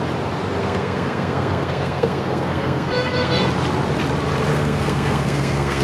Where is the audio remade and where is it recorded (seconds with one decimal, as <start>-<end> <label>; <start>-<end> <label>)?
0.0-0.6 recorded; 0.6-3.4 remade; 3.4-4.5 recorded; 4.5-5.8 remade